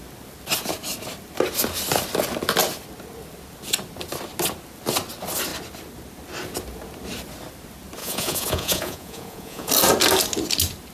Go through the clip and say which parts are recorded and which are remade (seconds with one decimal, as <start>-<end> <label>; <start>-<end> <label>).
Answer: 0.0-8.0 recorded; 8.0-9.7 remade; 9.7-10.9 recorded